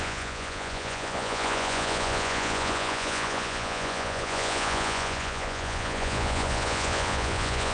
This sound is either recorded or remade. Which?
remade